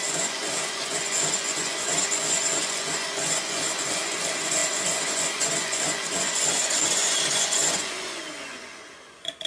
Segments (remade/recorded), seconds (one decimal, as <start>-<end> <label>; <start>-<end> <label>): 0.0-9.5 remade